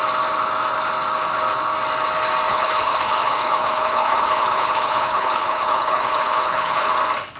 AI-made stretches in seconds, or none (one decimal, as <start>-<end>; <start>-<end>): 2.5-6.9

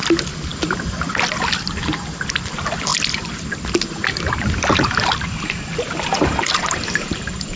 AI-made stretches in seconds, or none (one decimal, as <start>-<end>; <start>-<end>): none

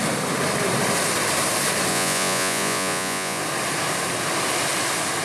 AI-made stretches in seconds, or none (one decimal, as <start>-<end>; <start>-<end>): 1.9-3.4

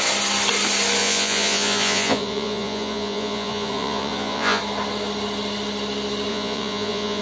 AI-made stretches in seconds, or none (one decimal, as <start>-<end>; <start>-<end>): 1.0-4.6; 6.3-7.2

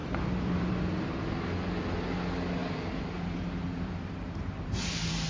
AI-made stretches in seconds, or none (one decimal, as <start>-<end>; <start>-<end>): 0.0-0.7; 2.6-4.8

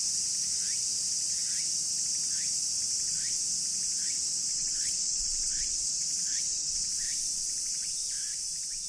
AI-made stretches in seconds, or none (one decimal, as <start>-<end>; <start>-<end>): 4.5-6.9

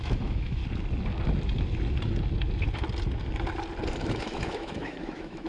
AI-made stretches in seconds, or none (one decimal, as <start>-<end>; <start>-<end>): 0.0-0.6; 3.9-5.5